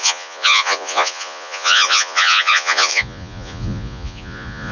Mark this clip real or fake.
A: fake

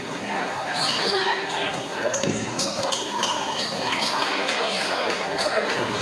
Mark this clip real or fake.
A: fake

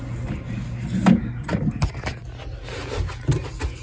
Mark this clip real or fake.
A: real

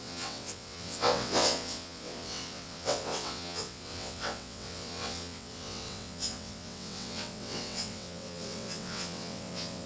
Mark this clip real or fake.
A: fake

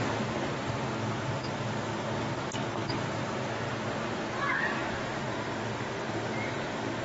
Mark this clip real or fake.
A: real